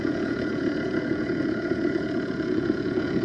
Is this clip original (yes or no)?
no